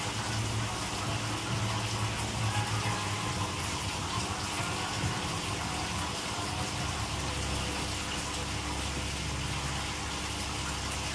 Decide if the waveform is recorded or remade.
recorded